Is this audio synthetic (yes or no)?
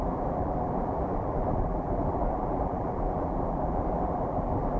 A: yes